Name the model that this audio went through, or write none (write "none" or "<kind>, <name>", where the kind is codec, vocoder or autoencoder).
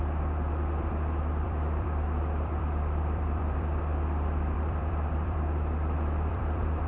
vocoder, BigVGAN v2